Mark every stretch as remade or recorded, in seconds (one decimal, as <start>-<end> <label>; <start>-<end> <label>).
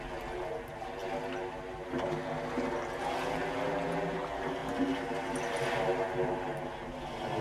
0.0-7.4 recorded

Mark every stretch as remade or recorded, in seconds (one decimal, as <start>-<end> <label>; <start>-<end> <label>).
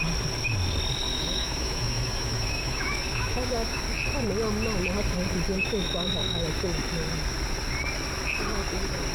0.0-1.1 recorded; 1.1-3.8 remade; 3.8-5.5 recorded; 5.5-6.4 remade; 6.4-9.1 recorded